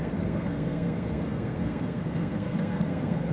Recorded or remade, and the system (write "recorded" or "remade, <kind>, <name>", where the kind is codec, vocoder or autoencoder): remade, codec, SNAC